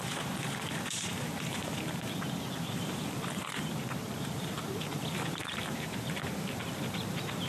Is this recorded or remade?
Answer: remade